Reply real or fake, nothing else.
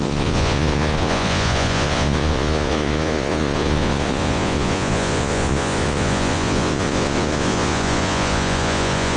fake